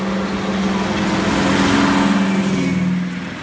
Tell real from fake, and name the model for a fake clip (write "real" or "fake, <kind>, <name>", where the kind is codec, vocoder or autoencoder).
real